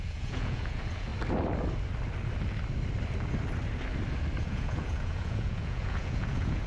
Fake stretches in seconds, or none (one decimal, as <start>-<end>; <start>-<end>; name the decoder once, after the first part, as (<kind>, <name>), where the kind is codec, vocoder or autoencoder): 0.0-1.1 (vocoder, Vocos); 4.4-6.7